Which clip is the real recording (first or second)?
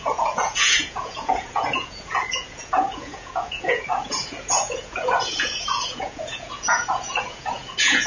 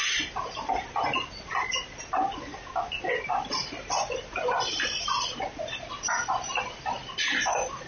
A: second